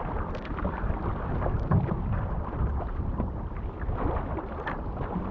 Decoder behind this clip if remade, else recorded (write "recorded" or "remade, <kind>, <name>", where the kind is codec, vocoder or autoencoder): recorded